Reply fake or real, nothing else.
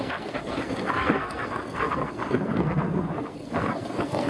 fake